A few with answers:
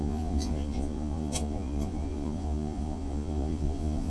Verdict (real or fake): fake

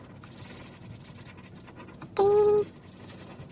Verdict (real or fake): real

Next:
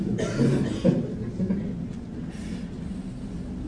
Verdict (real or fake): real